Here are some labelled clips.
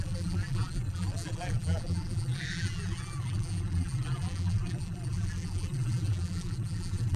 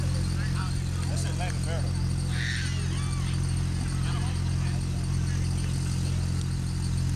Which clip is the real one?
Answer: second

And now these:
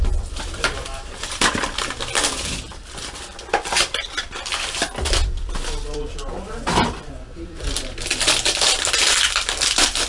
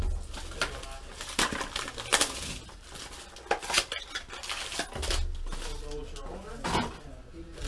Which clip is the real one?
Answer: second